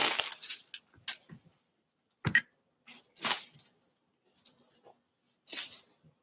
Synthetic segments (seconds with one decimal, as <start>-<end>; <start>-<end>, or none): 0.0-0.7